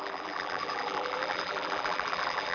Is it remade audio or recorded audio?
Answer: remade